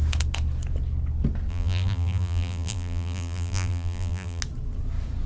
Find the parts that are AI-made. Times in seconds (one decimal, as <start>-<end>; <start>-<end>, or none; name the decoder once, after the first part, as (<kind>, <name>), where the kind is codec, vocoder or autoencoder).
1.5-4.4 (vocoder, BigVGAN v2)